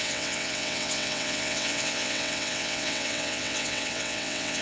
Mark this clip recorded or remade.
remade